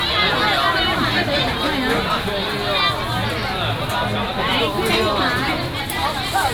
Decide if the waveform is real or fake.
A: real